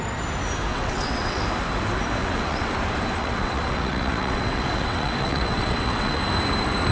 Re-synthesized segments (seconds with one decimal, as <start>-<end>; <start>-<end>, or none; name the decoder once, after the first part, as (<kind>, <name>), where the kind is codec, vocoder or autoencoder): 0.7-1.4 (vocoder, WaveNeXt); 2.2-2.7; 3.2-6.2